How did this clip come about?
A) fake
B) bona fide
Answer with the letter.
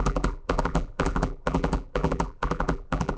A